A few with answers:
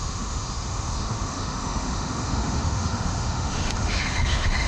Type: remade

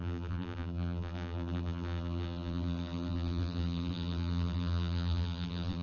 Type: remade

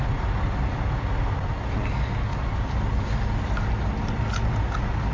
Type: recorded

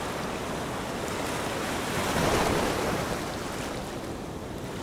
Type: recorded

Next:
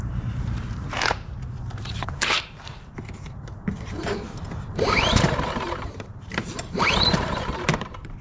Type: remade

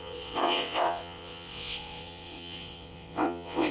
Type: remade